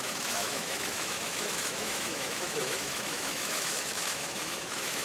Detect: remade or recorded remade